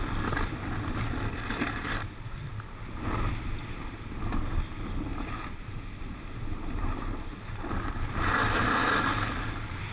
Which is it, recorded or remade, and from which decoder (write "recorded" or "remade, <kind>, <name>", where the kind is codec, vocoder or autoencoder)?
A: recorded